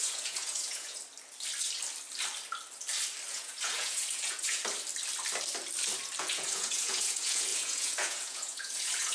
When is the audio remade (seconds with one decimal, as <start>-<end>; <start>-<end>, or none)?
0.0-1.0; 3.3-4.6; 6.2-9.1